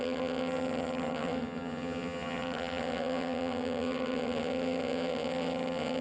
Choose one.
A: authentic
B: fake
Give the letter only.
B